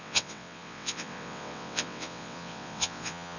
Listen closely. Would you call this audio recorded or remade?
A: remade